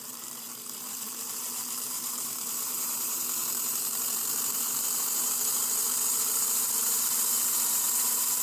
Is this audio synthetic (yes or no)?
yes